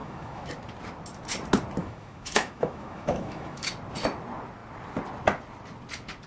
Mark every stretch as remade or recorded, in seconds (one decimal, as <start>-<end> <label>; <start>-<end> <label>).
0.0-0.5 remade; 0.5-1.8 recorded; 1.8-3.7 remade; 3.7-6.3 recorded